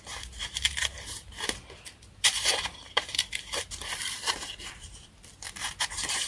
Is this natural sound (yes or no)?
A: no